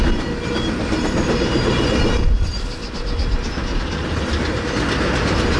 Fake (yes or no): no